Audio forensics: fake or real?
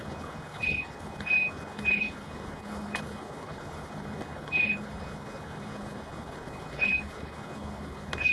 fake